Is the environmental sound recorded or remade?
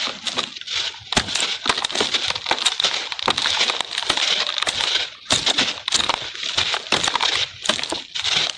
recorded